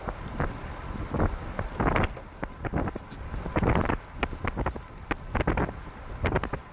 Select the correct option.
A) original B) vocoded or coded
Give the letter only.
A